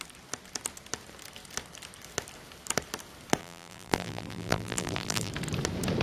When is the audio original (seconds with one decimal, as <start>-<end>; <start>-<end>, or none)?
0.0-3.4; 5.3-6.0